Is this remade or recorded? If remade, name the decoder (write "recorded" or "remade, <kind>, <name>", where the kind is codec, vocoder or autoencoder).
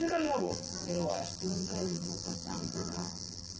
remade, vocoder, BigVGAN v2